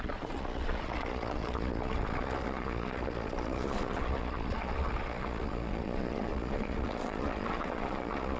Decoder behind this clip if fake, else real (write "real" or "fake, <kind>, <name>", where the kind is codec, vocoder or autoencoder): fake, vocoder, Vocos